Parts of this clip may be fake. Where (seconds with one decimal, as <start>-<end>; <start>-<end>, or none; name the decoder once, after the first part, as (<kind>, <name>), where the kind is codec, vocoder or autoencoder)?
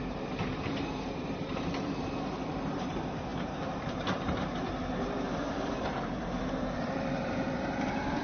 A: 0.0-8.2 (vocoder, BigVGAN v2)